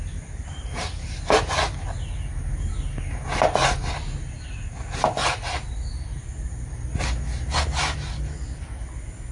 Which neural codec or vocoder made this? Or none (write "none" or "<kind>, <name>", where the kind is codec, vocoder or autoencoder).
none